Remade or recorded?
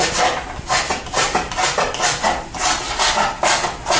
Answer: recorded